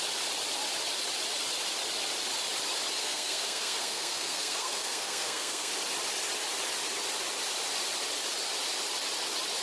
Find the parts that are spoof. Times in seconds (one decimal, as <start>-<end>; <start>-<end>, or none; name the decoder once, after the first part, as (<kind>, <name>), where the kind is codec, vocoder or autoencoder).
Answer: 3.0-5.7 (codec, SNAC)